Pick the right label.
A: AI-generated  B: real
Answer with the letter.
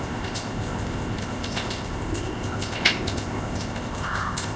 A